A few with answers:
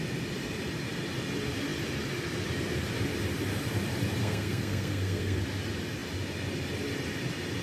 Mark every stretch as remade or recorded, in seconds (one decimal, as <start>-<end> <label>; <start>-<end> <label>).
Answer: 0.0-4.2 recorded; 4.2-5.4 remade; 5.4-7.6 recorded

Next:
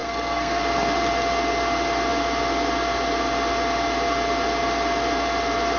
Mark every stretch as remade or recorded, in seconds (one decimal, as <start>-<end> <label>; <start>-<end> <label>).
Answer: 0.0-0.6 remade; 0.6-5.8 recorded

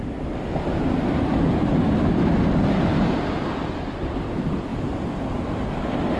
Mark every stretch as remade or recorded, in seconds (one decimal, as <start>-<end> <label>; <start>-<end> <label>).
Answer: 0.0-6.2 recorded

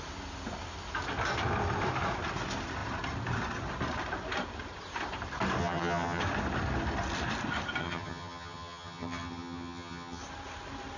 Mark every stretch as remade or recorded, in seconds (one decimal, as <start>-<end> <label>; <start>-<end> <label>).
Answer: 0.0-5.6 recorded; 5.6-6.2 remade; 6.2-7.8 recorded; 7.8-10.2 remade; 10.2-11.0 recorded